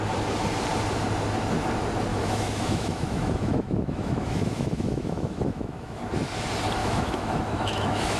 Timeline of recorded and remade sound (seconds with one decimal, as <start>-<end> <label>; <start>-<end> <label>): 0.0-2.1 recorded; 2.1-6.0 remade; 6.0-6.8 recorded; 6.8-8.2 remade